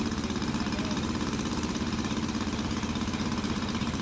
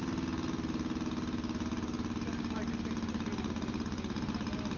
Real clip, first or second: second